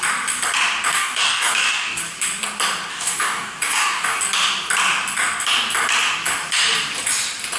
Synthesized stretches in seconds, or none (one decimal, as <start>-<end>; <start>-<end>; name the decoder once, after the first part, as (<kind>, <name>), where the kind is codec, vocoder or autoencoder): 0.9-2.0 (codec, DAC); 2.9-4.2